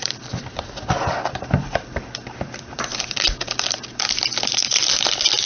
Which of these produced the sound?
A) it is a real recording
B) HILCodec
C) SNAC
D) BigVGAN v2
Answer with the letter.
D